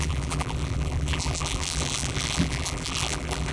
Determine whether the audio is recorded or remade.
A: remade